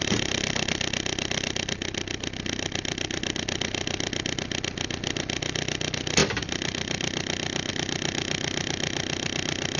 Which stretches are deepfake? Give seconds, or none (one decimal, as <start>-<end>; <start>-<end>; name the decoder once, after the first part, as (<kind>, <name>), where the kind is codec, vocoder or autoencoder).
none